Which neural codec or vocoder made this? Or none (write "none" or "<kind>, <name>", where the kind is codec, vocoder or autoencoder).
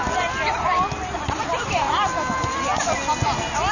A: none